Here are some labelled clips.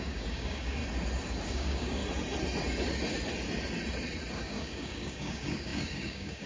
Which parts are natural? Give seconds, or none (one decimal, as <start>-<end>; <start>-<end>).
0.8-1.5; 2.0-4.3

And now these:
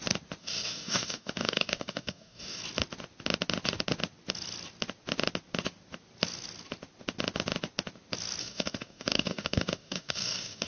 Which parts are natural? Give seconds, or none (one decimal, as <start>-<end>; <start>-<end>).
0.0-0.4; 2.6-8.4

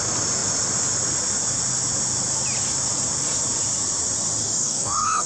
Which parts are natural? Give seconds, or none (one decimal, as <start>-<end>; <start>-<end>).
0.0-4.4

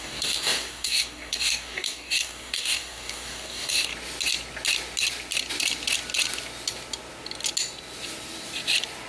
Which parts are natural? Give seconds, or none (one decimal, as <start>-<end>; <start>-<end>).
3.9-9.1

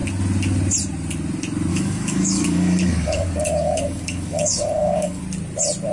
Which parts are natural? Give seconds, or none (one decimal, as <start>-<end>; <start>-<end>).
0.0-1.7; 5.2-5.9